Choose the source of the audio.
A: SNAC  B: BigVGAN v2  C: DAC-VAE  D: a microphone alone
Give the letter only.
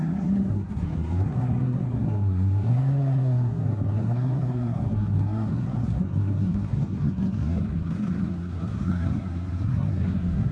A